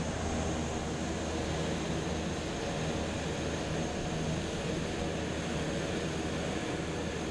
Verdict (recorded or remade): recorded